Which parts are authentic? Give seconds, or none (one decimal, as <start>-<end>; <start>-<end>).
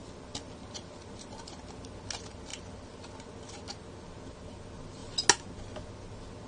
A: 0.0-6.5